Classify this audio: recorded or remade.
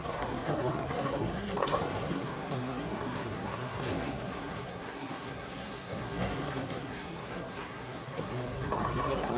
remade